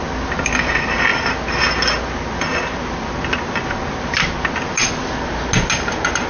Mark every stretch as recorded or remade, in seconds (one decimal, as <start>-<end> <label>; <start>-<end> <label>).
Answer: 0.0-6.3 recorded